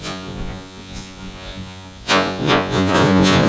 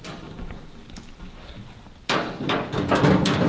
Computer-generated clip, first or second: first